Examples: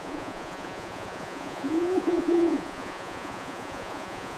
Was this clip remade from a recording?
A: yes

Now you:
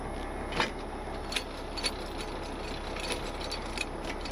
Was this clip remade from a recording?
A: no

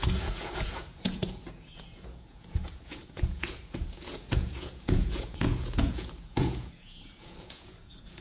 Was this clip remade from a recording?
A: yes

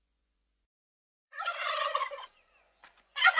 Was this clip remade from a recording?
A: yes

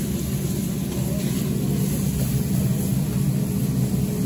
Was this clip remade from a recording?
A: no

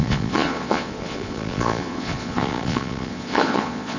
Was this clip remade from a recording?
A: yes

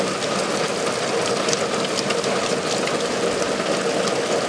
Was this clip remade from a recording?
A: no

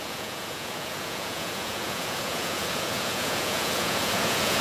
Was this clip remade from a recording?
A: yes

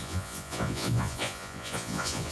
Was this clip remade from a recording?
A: yes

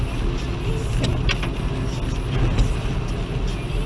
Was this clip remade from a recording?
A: no